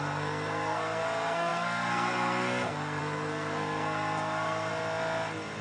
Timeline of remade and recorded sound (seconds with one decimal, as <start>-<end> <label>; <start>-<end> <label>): 0.0-4.7 remade; 4.7-5.6 recorded